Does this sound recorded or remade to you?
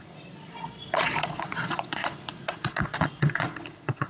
remade